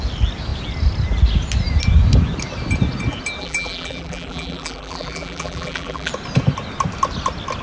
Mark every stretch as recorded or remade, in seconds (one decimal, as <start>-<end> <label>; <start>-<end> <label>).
0.0-3.4 recorded; 3.4-6.1 remade; 6.1-7.6 recorded